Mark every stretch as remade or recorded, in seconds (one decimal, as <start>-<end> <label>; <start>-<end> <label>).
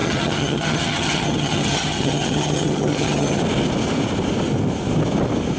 0.0-3.4 remade; 3.4-5.6 recorded